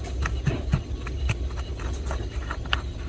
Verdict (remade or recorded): recorded